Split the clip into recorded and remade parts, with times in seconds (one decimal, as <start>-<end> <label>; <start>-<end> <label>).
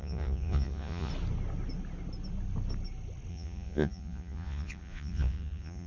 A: 0.0-1.1 remade; 1.1-3.3 recorded; 3.3-5.9 remade